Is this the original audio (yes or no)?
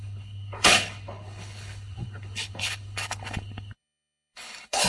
no